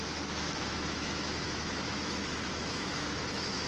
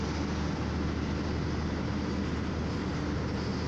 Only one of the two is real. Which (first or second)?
second